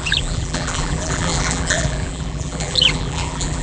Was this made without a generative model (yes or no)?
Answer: no